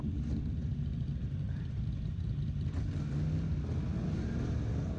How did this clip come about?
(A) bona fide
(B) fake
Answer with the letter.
A